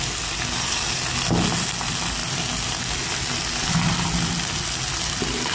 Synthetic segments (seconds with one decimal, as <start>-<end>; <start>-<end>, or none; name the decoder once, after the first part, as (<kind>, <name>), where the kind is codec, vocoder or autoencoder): none